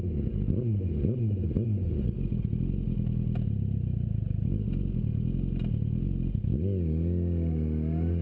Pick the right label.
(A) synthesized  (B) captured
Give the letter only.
B